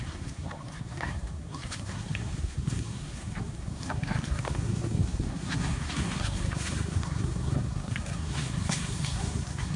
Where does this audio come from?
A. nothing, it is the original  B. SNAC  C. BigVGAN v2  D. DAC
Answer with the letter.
B